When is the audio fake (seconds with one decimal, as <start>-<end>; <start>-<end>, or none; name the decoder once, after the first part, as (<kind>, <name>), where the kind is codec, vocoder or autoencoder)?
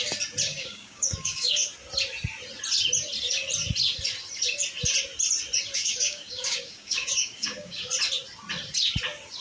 0.5-1.7 (codec, DAC); 5.8-7.8